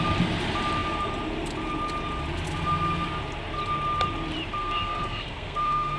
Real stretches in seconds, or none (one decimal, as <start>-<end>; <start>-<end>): 0.0-4.6